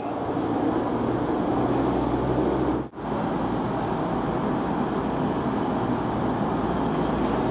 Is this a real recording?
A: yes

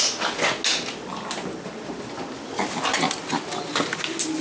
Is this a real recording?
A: yes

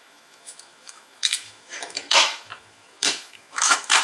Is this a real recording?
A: no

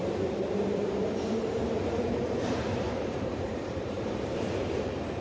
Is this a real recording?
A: no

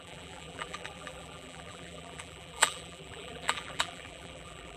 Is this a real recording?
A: no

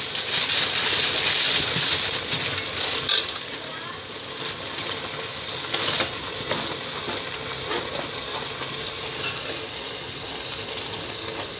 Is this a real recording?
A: yes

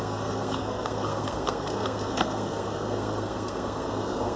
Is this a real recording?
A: no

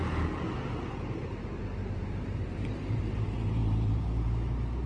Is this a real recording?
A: no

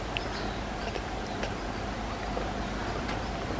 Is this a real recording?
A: yes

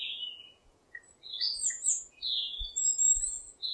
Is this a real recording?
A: no